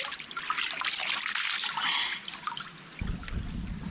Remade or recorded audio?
recorded